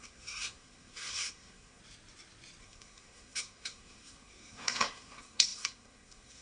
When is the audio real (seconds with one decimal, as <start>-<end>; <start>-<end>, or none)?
1.8-2.6